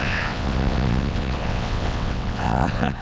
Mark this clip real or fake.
fake